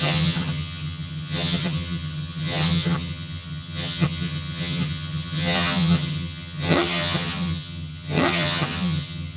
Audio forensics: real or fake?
fake